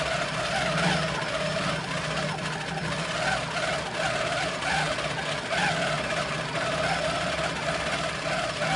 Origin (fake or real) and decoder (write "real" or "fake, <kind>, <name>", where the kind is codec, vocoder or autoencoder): real